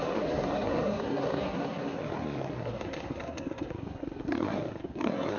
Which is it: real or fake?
fake